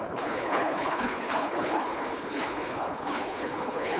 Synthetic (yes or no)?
yes